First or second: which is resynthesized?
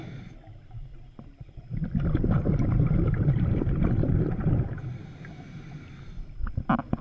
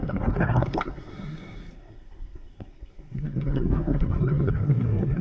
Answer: second